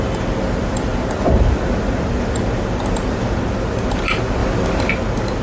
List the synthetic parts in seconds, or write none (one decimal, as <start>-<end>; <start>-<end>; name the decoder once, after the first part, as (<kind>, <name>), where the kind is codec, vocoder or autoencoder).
none